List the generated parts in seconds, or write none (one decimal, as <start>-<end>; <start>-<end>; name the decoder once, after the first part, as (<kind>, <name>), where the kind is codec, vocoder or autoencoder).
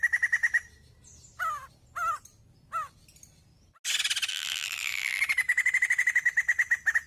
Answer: 4.3-5.2 (vocoder, BigVGAN v2)